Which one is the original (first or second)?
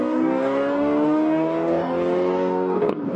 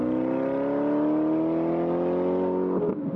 second